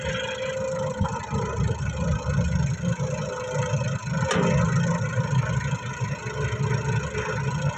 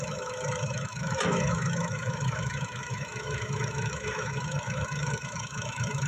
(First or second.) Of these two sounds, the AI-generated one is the second